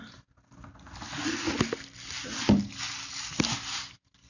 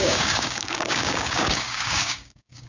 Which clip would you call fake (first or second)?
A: second